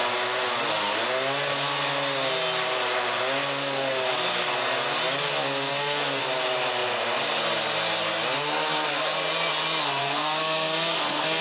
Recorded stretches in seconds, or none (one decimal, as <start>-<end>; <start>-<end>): 0.0-5.7; 6.2-10.0